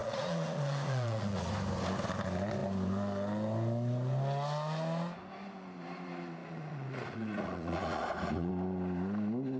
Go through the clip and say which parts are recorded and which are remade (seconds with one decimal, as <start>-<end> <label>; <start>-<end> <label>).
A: 0.0-1.5 remade; 1.5-6.4 recorded; 6.4-8.5 remade; 8.5-9.6 recorded